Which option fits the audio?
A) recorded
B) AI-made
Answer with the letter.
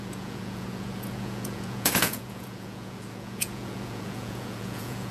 B